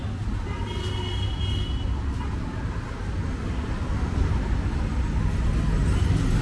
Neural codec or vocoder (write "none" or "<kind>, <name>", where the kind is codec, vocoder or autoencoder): none